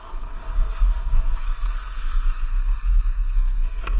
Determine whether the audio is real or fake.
fake